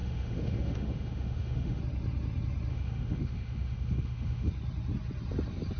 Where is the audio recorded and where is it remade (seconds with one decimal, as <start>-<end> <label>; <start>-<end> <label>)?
0.0-1.8 remade; 1.8-2.7 recorded; 2.7-4.5 remade; 4.5-5.8 recorded